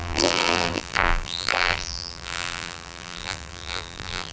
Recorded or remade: remade